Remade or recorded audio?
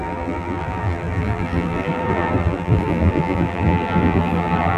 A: remade